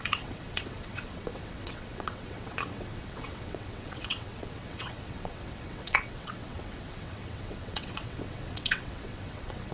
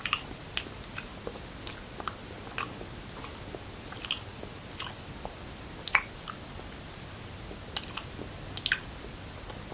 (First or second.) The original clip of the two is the second